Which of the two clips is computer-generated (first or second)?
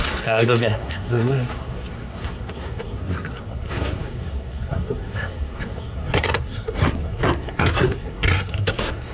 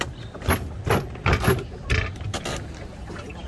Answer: first